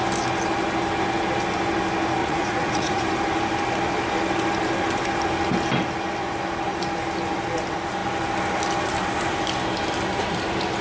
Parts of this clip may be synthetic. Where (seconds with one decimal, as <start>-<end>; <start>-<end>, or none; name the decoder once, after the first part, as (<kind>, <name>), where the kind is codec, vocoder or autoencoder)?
2.2-3.0 (vocoder, Vocos)